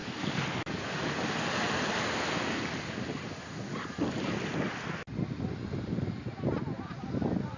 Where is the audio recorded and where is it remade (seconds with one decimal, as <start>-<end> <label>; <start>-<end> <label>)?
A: 0.0-7.6 recorded